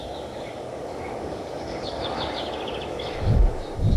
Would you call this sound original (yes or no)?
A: no